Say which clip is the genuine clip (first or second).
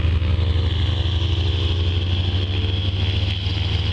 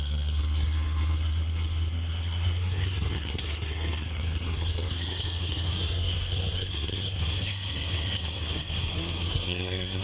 first